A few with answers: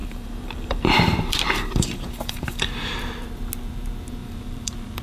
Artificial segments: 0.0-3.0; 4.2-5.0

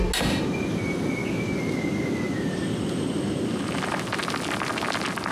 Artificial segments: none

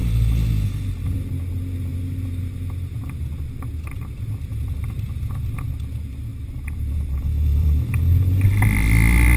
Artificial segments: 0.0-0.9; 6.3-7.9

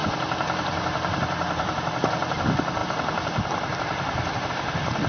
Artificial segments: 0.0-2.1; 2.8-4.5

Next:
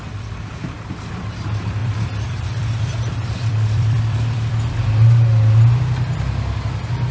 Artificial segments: 1.8-4.5

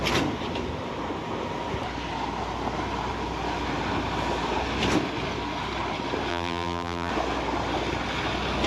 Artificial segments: 6.3-7.1